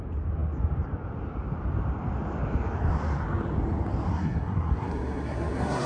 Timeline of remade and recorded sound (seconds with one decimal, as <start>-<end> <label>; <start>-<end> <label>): 0.0-4.1 recorded; 4.1-5.9 remade